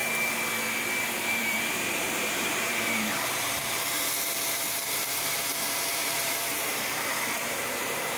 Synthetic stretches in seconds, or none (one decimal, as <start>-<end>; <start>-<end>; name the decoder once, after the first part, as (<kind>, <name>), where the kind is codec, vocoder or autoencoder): 0.9-8.2 (vocoder, BigVGAN v2)

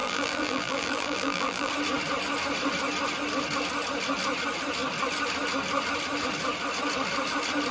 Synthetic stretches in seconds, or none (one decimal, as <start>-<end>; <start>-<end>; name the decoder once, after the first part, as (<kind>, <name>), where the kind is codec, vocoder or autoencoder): 0.0-1.7 (vocoder, BigVGAN v2)

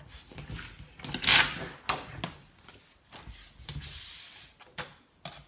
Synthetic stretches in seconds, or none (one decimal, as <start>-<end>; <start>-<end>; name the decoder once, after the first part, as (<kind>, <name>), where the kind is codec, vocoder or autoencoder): none